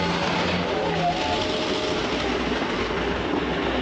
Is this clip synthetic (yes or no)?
no